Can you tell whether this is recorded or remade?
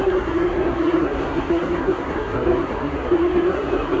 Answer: remade